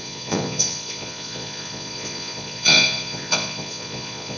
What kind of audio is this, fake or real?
fake